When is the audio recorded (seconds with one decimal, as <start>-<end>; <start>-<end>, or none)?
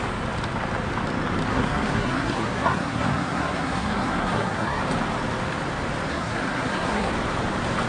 0.0-1.5; 4.8-6.1; 7.1-7.9